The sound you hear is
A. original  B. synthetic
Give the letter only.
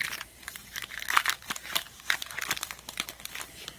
B